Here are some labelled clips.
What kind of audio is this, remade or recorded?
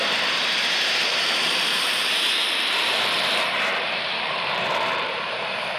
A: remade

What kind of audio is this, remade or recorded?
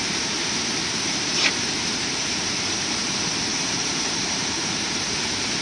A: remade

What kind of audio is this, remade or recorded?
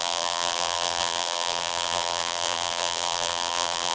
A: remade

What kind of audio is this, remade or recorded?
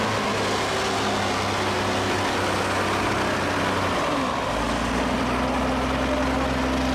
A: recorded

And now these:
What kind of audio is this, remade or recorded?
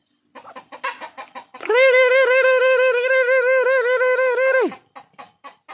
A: recorded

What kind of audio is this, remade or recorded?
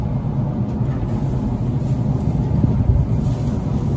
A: recorded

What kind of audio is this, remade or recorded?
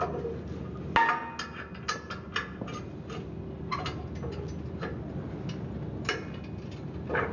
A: recorded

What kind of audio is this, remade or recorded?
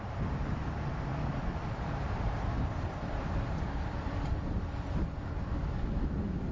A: remade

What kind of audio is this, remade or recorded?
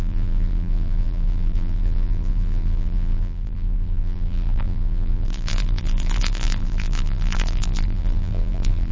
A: remade